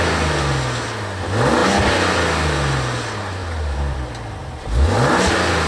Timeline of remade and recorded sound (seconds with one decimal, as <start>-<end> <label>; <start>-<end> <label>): 0.0-5.7 recorded